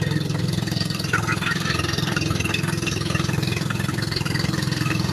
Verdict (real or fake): fake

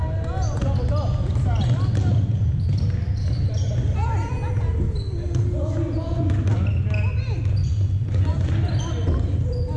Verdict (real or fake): real